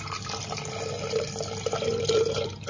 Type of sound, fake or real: real